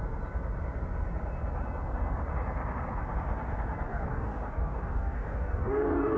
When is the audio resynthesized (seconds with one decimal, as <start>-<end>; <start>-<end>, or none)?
3.9-6.2